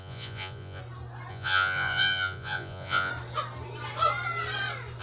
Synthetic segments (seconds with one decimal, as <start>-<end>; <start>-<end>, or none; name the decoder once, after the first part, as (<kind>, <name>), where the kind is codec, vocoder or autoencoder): 0.0-0.8 (vocoder, Vocos); 1.3-3.1